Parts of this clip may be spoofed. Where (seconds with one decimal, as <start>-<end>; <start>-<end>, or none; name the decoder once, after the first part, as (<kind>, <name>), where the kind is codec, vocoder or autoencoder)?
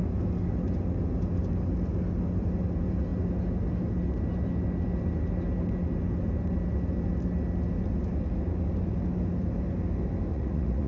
10.3-10.9 (vocoder, Vocos)